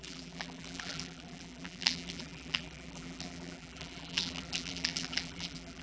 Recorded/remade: remade